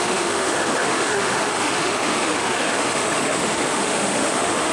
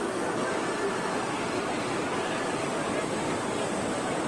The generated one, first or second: first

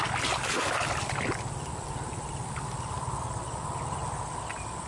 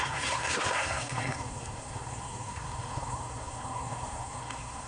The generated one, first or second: second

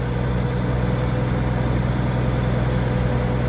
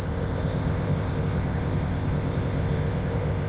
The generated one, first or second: second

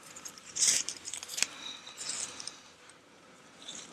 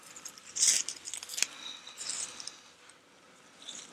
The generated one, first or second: first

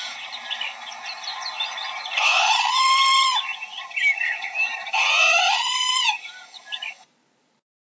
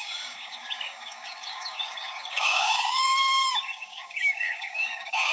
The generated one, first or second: second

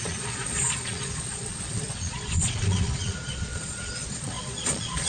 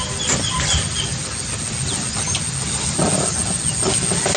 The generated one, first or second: first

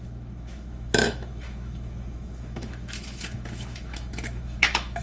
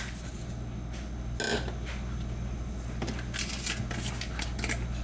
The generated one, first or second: first